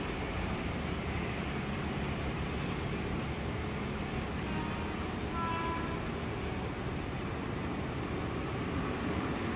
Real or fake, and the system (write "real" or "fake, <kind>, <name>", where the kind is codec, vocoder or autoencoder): real